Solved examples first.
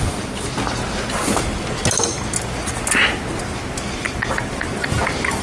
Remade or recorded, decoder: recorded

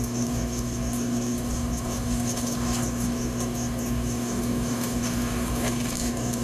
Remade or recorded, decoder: remade, codec, DAC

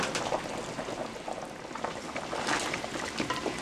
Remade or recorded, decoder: recorded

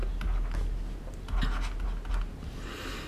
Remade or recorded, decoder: recorded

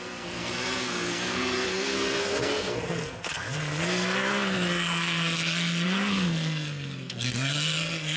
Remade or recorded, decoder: remade, codec, SNAC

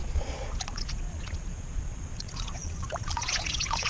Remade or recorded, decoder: remade, vocoder, Vocos